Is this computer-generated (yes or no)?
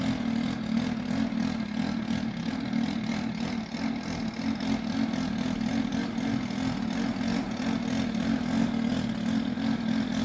no